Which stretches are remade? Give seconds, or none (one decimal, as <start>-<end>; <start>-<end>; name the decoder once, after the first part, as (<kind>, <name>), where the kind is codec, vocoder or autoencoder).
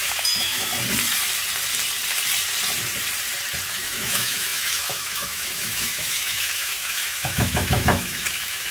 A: 0.0-0.7 (autoencoder, DAC-VAE); 3.7-8.7